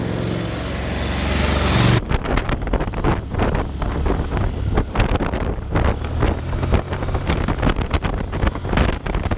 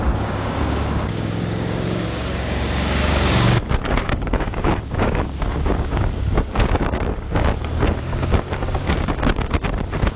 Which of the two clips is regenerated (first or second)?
second